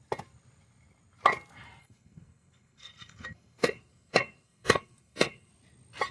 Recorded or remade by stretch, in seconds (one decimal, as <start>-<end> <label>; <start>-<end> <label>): 0.0-1.8 recorded; 1.8-5.5 remade; 5.5-6.1 recorded